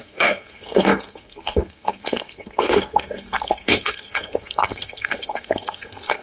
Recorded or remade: remade